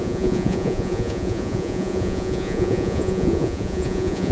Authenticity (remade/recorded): remade